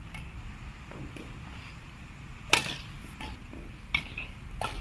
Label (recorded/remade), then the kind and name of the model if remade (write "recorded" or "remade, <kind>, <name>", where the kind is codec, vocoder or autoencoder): recorded